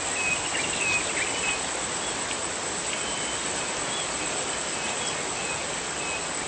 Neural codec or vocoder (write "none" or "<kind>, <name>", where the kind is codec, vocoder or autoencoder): none